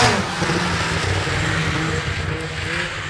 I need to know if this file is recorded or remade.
recorded